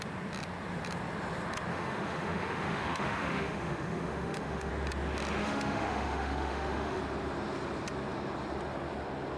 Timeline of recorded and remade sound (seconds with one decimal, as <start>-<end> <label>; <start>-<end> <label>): 0.0-1.7 recorded; 1.7-4.7 remade; 4.7-5.4 recorded; 5.4-7.0 remade; 7.0-9.4 recorded